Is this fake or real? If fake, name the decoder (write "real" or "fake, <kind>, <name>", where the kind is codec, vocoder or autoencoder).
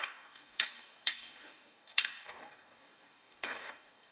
fake, codec, DAC